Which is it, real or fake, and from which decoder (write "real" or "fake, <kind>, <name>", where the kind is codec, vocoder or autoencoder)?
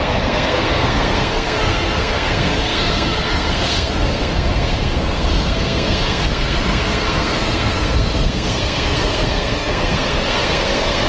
fake, codec, SNAC